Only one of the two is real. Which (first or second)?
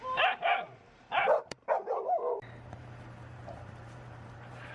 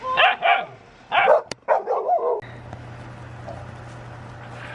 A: second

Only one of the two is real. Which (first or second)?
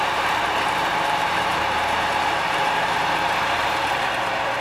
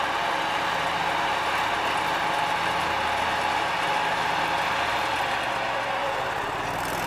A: second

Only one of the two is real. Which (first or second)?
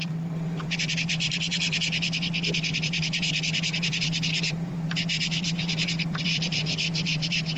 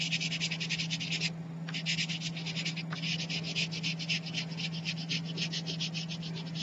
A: second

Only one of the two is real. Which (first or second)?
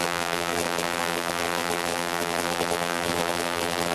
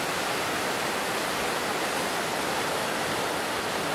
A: second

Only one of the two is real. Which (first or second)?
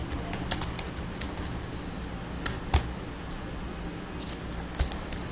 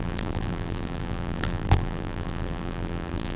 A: first